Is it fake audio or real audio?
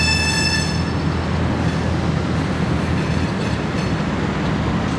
real